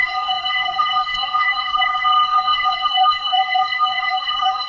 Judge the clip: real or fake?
fake